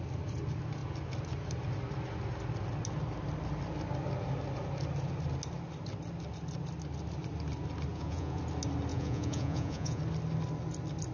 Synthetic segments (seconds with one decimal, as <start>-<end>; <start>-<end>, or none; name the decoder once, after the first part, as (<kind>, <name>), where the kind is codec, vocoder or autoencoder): 7.9-8.4 (vocoder, Vocos); 8.9-10.0